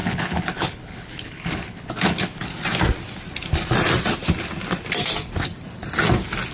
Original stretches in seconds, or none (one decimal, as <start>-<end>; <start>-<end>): 2.5-6.5